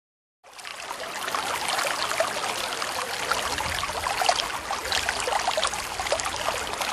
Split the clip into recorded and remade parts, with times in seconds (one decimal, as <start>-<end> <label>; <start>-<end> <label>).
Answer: 0.0-6.9 recorded